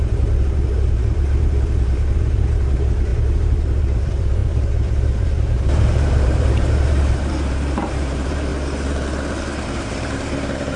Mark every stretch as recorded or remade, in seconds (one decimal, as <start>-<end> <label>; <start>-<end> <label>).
0.0-8.5 remade; 8.5-9.6 recorded; 9.6-10.8 remade